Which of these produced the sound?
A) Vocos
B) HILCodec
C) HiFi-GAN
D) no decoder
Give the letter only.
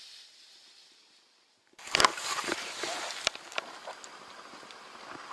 D